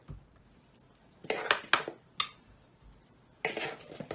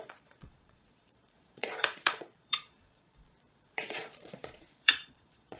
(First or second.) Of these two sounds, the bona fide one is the first